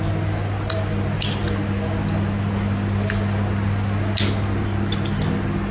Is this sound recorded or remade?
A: recorded